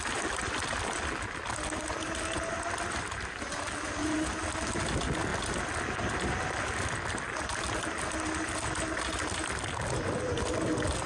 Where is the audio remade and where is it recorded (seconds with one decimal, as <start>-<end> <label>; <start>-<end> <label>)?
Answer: 0.0-11.1 recorded